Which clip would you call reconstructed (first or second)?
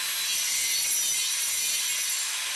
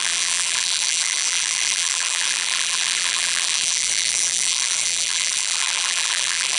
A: second